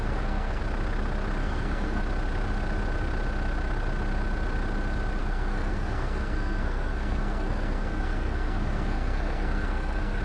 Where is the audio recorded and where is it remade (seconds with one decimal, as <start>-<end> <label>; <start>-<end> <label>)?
0.0-0.6 remade; 0.6-1.4 recorded; 1.4-2.0 remade; 2.0-5.2 recorded; 5.2-10.2 remade